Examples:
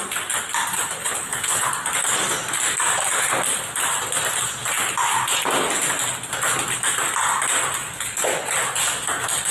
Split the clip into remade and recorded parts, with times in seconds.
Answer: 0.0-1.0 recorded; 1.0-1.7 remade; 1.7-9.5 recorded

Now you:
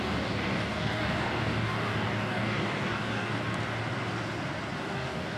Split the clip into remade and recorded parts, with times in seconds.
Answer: 0.0-3.4 remade; 3.4-4.8 recorded; 4.8-5.4 remade

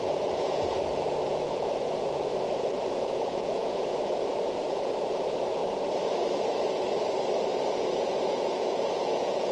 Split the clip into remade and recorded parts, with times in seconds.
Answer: 0.0-5.6 remade; 5.6-7.7 recorded; 7.7-9.5 remade

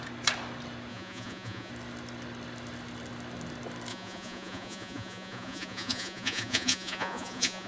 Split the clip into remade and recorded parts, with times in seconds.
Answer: 0.0-0.9 recorded; 0.9-1.7 remade; 1.7-3.9 recorded; 3.9-7.7 remade

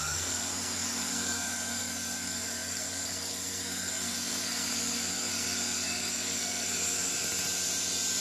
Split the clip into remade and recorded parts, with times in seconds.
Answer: 0.0-7.1 remade; 7.1-8.2 recorded

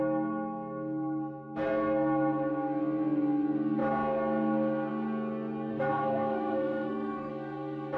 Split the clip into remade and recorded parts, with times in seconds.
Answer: 0.0-5.7 recorded; 5.7-7.3 remade; 7.3-8.0 recorded

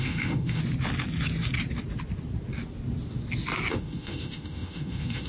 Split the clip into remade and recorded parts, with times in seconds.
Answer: 0.0-0.6 remade; 0.6-3.7 recorded; 3.7-5.3 remade

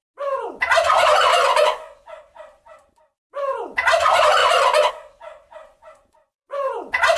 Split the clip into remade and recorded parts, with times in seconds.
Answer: 0.0-1.3 recorded; 1.3-2.2 remade; 2.2-5.6 recorded; 5.6-6.7 remade; 6.7-7.2 recorded